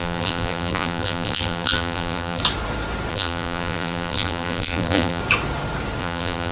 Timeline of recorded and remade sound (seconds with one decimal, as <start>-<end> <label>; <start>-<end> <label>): 0.0-2.4 remade; 2.4-3.1 recorded; 3.1-5.2 remade; 5.2-6.0 recorded; 6.0-6.5 remade